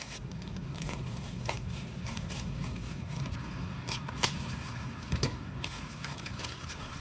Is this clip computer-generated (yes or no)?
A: yes